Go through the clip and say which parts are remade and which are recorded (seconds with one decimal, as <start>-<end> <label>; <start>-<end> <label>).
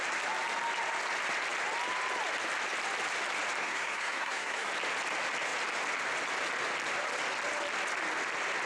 0.0-3.6 recorded; 3.6-4.7 remade; 4.7-8.7 recorded